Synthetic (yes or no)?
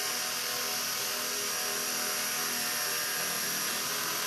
no